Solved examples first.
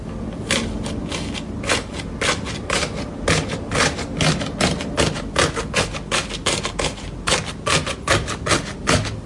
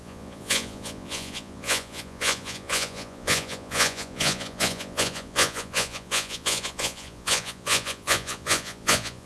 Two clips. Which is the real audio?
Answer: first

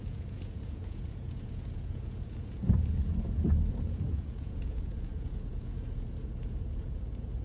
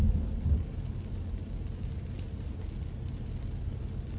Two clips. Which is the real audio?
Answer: second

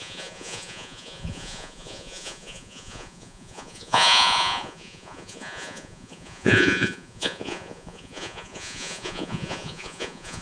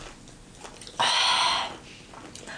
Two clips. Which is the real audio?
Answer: second